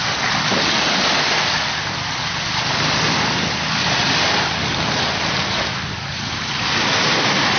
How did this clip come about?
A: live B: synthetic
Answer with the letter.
A